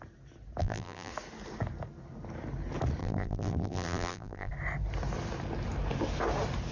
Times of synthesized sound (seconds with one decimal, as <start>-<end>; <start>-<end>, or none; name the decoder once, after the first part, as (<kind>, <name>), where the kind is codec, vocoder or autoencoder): 0.6-1.1 (vocoder, BigVGAN v2); 3.0-4.5